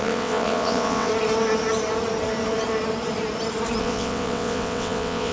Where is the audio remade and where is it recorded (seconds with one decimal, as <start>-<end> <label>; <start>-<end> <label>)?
0.0-1.1 remade; 1.1-3.8 recorded; 3.8-5.3 remade